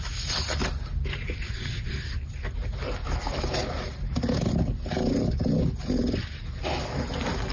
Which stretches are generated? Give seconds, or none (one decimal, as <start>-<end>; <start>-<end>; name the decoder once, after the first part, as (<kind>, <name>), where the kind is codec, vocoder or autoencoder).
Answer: 1.4-1.9 (vocoder, Vocos)